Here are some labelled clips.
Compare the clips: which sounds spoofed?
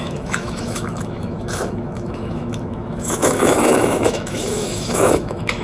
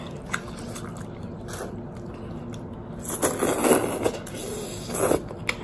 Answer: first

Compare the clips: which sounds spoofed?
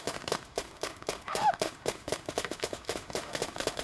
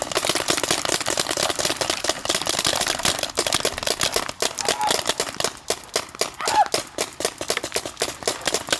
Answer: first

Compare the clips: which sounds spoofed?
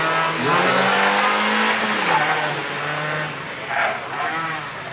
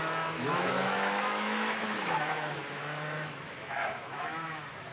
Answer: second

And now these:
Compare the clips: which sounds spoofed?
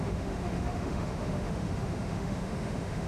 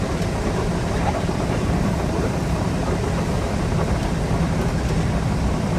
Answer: first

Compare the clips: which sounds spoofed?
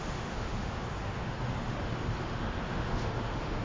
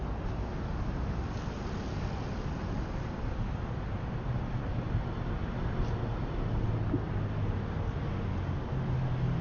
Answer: first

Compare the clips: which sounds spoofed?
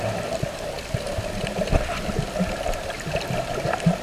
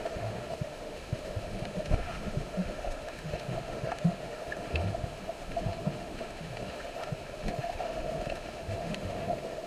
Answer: second